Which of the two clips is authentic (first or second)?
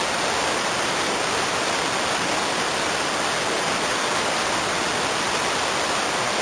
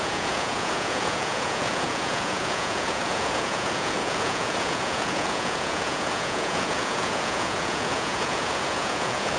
first